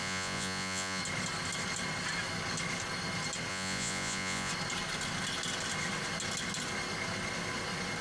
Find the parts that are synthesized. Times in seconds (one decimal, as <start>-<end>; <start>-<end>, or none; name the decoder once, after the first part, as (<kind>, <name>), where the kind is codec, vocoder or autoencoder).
0.0-1.0 (vocoder, Vocos); 3.5-4.5